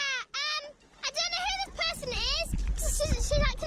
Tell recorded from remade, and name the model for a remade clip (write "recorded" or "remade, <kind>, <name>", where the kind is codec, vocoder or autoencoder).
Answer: recorded